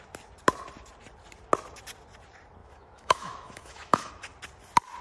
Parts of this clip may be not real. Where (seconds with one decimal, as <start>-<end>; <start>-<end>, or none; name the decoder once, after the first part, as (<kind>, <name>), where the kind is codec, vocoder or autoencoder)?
2.6-4.1 (autoencoder, DAC-VAE)